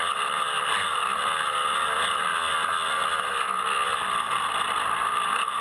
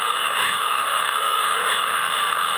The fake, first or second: second